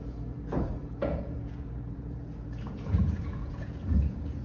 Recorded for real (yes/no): no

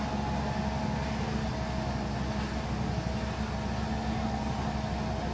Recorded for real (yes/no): yes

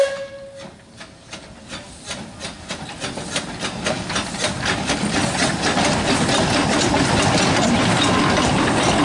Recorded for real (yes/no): yes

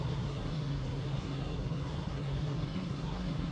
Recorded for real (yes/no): no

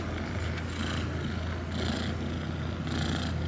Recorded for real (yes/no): yes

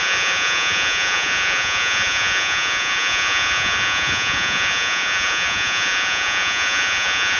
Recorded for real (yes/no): no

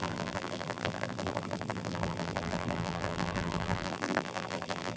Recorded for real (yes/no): no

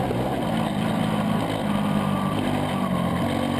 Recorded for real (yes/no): yes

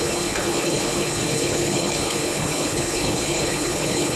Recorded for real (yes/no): no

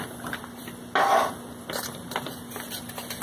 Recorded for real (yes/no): yes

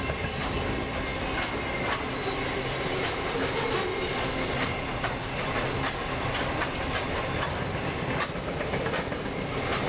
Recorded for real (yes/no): yes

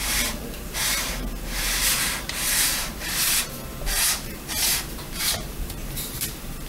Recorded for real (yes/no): no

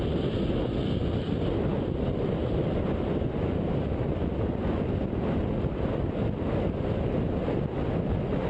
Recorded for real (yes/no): yes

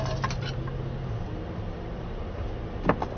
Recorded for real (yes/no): yes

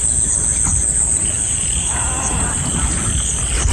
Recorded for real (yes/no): yes